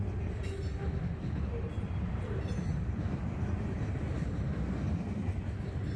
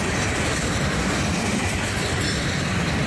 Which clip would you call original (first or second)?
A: first